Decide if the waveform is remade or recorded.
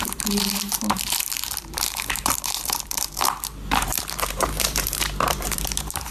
remade